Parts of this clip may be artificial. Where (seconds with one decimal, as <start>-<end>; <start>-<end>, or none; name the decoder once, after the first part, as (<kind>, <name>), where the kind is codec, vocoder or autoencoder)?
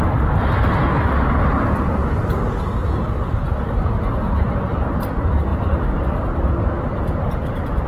none